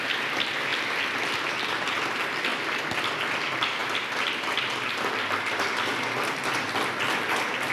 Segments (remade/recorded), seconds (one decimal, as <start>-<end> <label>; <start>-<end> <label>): 0.0-7.7 recorded